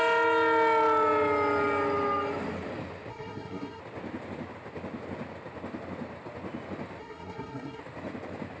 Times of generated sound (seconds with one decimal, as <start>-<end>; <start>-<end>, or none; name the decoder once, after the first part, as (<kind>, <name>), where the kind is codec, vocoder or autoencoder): 3.1-3.8 (codec, SNAC); 7.0-7.8